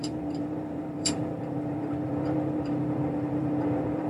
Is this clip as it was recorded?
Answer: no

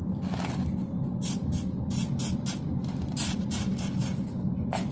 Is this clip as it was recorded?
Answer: yes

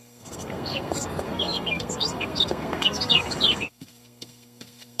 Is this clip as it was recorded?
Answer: no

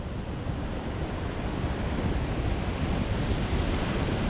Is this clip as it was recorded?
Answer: no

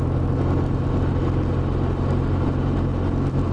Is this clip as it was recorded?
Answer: yes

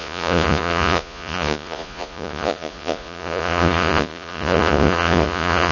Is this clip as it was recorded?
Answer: no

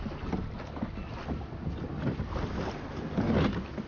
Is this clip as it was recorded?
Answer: yes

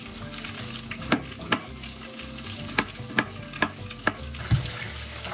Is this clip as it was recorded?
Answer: no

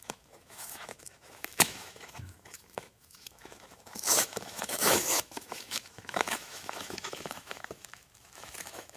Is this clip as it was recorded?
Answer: no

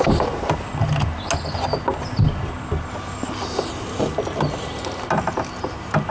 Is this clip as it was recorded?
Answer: yes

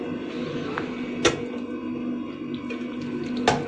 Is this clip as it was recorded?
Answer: yes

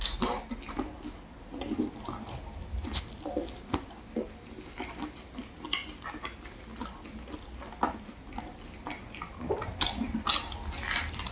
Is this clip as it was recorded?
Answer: yes